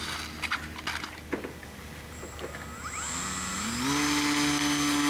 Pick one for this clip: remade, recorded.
recorded